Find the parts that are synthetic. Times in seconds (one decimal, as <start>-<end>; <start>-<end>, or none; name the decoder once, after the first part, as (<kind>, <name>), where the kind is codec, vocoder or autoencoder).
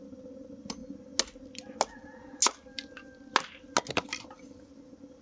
none